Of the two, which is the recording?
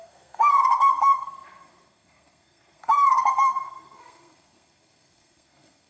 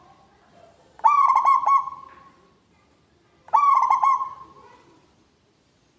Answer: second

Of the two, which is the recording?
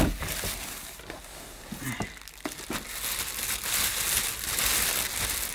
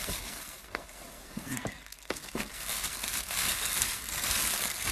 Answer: first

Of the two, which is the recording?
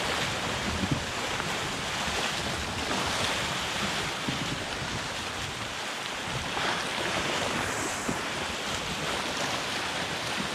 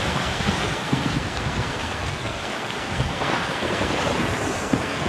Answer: first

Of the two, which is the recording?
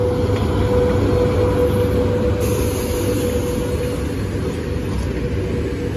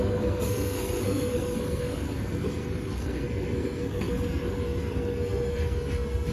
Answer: first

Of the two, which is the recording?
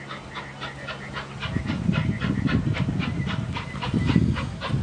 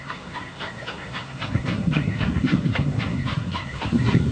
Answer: first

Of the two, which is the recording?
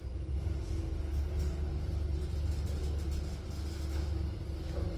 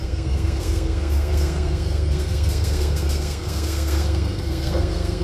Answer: first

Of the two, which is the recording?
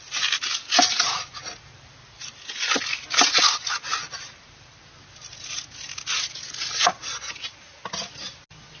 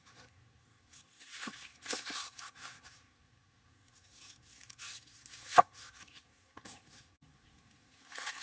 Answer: first